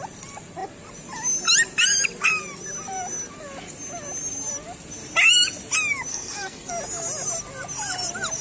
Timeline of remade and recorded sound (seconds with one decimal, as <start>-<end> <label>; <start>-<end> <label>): 0.0-6.1 recorded; 6.1-6.7 remade; 6.7-8.4 recorded